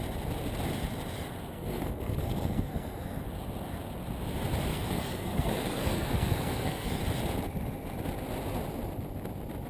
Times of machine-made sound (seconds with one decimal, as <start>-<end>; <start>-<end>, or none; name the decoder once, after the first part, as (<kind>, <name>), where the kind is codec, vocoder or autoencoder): 1.5-3.2 (codec, SNAC); 4.7-7.0